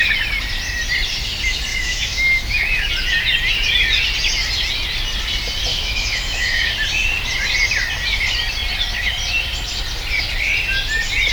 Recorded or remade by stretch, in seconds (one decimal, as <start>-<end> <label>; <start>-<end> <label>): 0.0-1.7 recorded; 1.7-2.9 remade; 2.9-5.7 recorded; 5.7-6.7 remade; 6.7-11.3 recorded